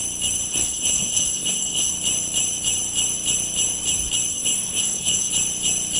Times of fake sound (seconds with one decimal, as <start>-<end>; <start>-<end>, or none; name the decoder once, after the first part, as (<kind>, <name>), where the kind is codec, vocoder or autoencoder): 0.5-1.9 (codec, SNAC); 4.3-5.3

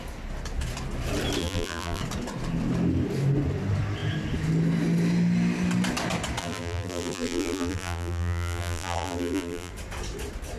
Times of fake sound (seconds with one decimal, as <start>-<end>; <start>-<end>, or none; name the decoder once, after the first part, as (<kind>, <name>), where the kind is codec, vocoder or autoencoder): 1.4-2.0 (vocoder, BigVGAN v2); 6.4-9.7

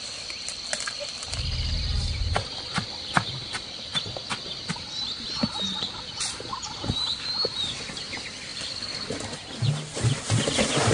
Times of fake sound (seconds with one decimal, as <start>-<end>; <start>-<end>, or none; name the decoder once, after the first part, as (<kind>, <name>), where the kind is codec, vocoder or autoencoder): 0.0-3.9 (vocoder, BigVGAN v2); 5.3-10.9

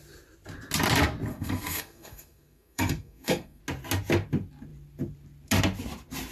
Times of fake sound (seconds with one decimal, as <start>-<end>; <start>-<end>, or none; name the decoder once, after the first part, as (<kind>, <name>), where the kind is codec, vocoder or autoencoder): 1.3-3.6 (codec, SNAC)

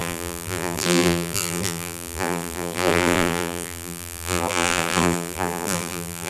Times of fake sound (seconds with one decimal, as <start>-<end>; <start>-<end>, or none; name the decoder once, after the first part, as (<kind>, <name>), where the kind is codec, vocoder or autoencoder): 0.0-6.3 (vocoder, BigVGAN v2)

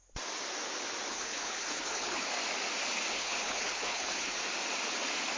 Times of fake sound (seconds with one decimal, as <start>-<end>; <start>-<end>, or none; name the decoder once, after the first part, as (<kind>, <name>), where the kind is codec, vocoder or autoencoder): 1.1-2.2 (codec, HILCodec); 3.1-4.4